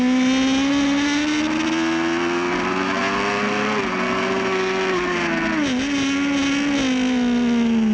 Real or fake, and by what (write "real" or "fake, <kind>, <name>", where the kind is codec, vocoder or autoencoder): real